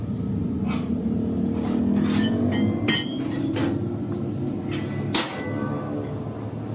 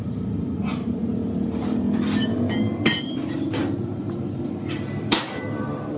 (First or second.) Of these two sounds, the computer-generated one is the second